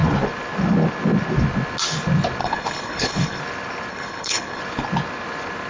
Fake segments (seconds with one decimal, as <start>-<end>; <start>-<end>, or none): 2.4-3.4; 3.9-4.6